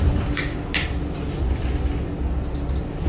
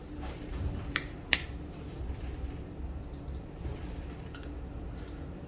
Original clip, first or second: first